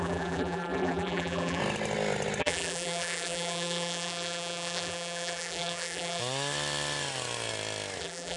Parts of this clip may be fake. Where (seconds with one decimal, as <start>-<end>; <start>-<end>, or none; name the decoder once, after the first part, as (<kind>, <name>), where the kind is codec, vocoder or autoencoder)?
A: 0.0-1.6 (vocoder, BigVGAN v2); 2.4-6.2; 8.0-8.4